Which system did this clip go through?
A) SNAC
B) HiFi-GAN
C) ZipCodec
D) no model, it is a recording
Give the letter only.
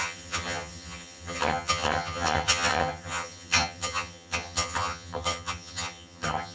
B